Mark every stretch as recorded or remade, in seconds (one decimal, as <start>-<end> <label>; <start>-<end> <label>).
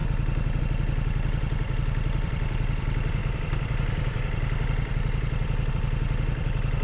0.0-6.8 remade